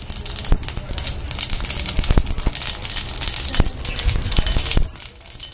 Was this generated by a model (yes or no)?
no